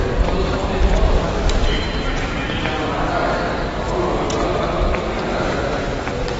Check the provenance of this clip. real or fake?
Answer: real